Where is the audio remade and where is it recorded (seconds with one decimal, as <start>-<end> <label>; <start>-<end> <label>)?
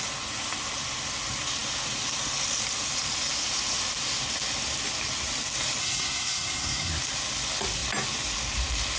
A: 0.0-5.8 recorded; 5.8-6.9 remade; 6.9-9.0 recorded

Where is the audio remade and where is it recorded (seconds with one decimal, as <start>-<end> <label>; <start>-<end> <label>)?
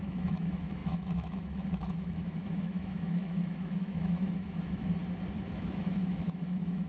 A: 0.0-5.0 remade; 5.0-5.5 recorded; 5.5-6.9 remade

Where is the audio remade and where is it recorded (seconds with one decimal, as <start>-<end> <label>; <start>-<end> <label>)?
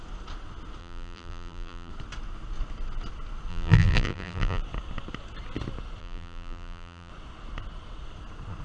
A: 0.0-0.8 recorded; 0.8-1.9 remade; 1.9-3.5 recorded; 3.5-4.6 remade; 4.6-6.0 recorded; 6.0-7.1 remade; 7.1-8.6 recorded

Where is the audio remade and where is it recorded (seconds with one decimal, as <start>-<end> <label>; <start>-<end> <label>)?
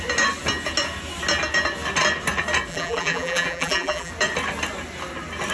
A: 0.0-2.7 recorded; 2.7-4.1 remade; 4.1-5.5 recorded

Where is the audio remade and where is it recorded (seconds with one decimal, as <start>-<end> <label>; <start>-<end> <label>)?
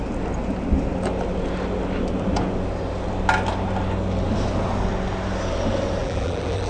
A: 0.0-6.0 recorded; 6.0-6.7 remade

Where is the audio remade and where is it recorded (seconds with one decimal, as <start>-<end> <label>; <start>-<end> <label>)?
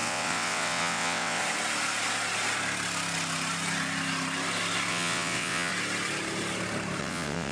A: 0.0-1.4 remade; 1.4-4.9 recorded; 4.9-5.7 remade; 5.7-7.0 recorded; 7.0-7.5 remade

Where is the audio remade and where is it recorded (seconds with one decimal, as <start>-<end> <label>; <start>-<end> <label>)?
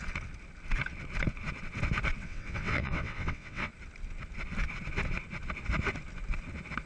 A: 0.0-2.2 recorded; 2.2-3.7 remade; 3.7-6.9 recorded